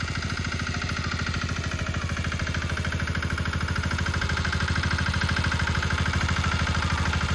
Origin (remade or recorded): recorded